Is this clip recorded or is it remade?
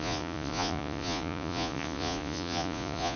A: remade